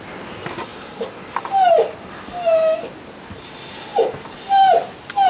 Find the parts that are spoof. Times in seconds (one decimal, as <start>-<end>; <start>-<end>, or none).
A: none